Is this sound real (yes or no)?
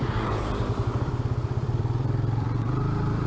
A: no